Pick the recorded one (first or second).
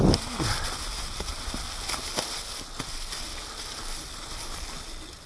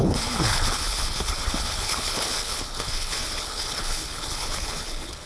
first